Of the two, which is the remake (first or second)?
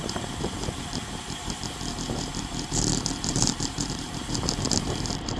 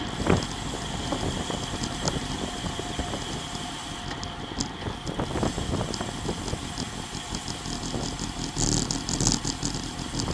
first